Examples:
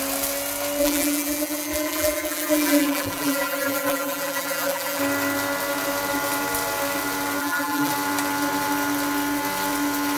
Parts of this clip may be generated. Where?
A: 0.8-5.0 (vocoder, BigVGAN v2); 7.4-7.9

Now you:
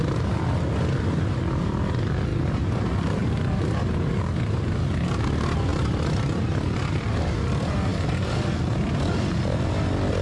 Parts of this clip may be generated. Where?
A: 2.3-2.8 (vocoder, BigVGAN v2); 3.2-3.8; 5.7-7.1

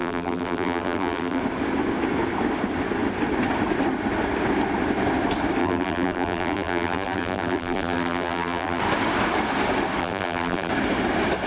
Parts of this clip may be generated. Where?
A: 0.0-1.4 (vocoder, BigVGAN v2); 5.6-8.8; 10.0-10.7

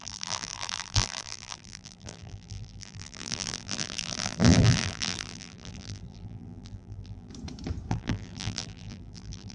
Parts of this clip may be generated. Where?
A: 0.0-7.3 (vocoder, BigVGAN v2); 7.9-9.5

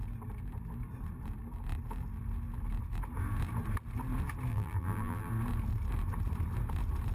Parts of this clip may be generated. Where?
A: 4.5-5.3 (vocoder, BigVGAN v2)

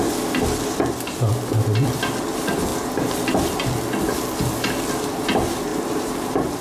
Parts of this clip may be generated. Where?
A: 5.7-6.6 (vocoder, BigVGAN v2)

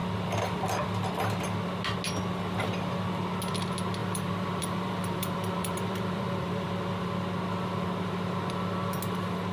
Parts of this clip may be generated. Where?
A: 4.0-6.7 (vocoder, BigVGAN v2)